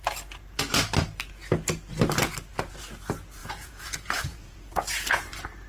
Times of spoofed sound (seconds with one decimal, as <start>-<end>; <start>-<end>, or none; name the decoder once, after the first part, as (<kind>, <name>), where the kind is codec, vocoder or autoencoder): 3.4-4.7 (vocoder, Vocos)